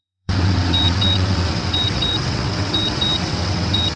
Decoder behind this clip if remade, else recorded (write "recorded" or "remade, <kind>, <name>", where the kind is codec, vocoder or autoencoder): remade, vocoder, WaveNeXt